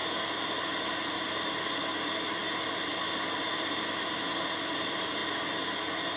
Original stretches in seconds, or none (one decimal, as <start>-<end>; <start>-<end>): 0.0-1.2; 5.2-6.2